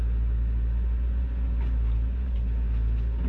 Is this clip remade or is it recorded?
recorded